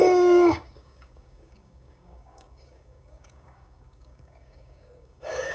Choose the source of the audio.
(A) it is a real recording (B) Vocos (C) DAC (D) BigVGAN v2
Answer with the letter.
C